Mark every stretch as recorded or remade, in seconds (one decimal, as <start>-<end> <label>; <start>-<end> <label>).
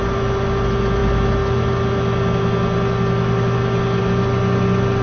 0.0-5.0 recorded